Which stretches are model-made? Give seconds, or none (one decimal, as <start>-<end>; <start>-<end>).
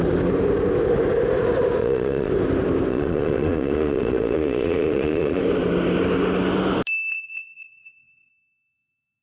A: 1.8-2.3; 2.9-5.4; 7.1-8.3